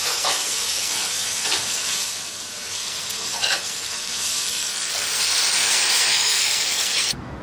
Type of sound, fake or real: fake